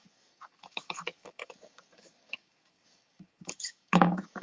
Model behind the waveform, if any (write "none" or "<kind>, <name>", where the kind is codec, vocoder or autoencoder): codec, DAC